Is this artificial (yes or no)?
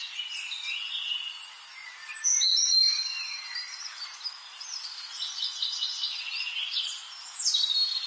no